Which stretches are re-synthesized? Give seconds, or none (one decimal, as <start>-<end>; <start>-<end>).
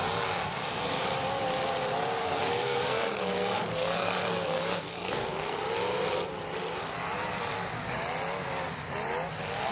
2.2-5.6